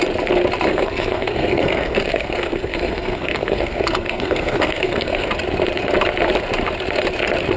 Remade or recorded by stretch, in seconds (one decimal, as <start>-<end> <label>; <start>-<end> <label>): 0.0-0.7 recorded; 0.7-5.3 remade; 5.3-7.6 recorded